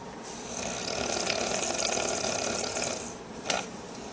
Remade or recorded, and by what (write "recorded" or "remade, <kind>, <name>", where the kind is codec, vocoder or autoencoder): recorded